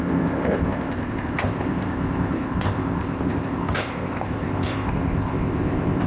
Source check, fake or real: fake